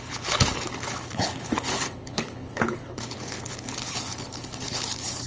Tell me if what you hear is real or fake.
fake